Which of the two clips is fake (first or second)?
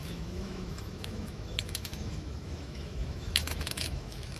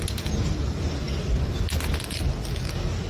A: first